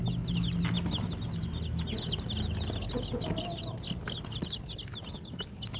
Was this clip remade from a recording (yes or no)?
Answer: no